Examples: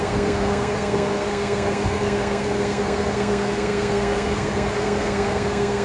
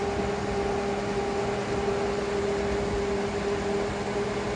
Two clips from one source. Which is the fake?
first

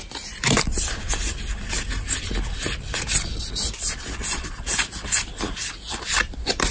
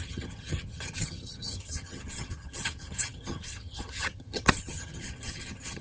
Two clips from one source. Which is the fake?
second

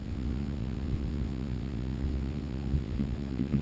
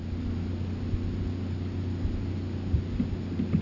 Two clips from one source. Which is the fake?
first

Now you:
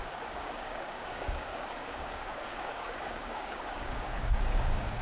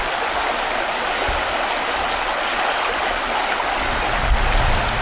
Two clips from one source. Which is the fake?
first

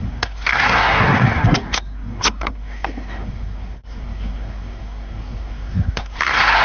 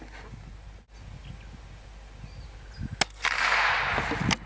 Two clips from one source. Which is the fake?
first